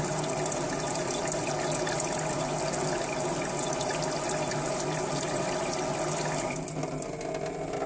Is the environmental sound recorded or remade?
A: recorded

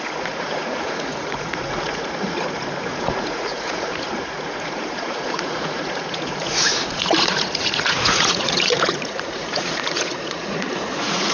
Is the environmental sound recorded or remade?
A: remade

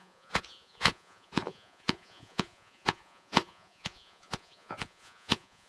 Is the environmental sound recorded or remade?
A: remade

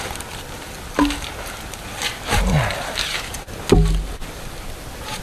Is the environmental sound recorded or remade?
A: recorded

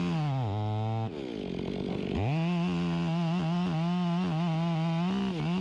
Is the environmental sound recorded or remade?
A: recorded